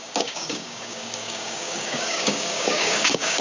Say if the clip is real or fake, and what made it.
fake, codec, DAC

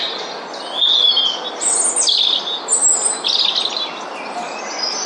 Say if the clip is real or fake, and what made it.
real